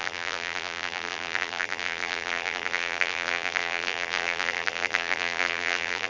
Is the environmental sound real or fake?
fake